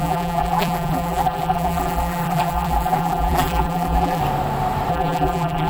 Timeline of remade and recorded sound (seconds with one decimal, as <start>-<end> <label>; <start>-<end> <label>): 0.0-4.2 remade; 4.2-4.9 recorded; 4.9-5.7 remade